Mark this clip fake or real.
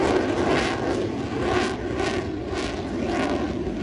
real